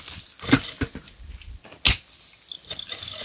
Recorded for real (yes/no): yes